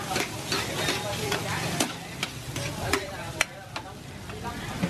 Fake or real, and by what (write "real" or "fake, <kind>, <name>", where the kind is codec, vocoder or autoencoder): real